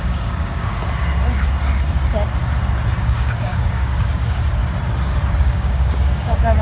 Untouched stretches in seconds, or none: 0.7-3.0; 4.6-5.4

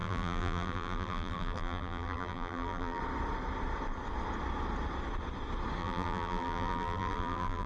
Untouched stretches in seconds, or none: 3.0-5.8

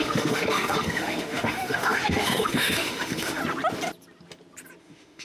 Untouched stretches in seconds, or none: 3.4-4.8